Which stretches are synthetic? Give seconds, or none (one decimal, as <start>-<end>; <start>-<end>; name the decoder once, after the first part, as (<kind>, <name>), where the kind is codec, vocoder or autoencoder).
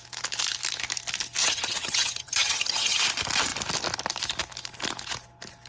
1.4-3.0 (vocoder, HiFi-GAN)